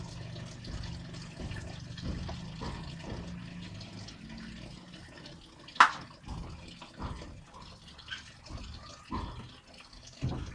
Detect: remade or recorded recorded